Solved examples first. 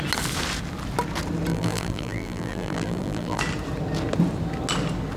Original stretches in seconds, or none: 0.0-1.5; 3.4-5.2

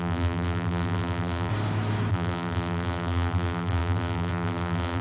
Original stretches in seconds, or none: 1.5-2.1

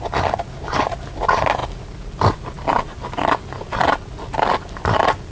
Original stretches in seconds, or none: 0.0-5.3

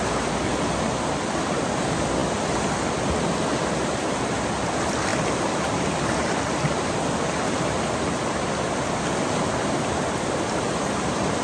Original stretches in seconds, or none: 0.0-5.1; 6.8-11.4

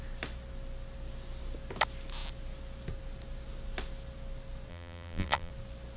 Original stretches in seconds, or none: 0.0-4.7; 5.5-6.0

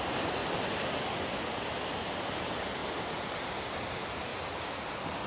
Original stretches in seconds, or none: 0.4-1.5; 4.3-5.3